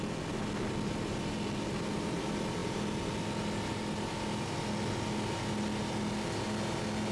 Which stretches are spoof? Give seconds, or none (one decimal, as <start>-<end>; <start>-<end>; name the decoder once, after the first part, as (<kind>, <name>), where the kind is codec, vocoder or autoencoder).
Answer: none